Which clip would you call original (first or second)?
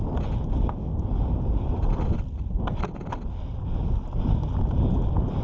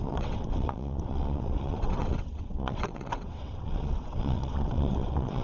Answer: first